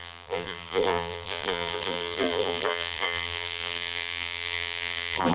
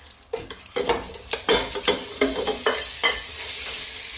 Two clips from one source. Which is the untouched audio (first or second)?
second